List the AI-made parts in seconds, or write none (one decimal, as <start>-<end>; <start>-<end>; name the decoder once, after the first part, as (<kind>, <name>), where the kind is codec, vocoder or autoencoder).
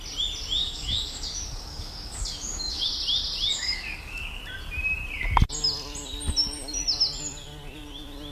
0.6-2.9 (codec, DAC); 3.5-4.4